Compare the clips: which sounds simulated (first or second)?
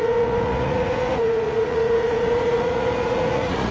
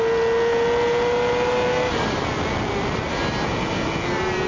first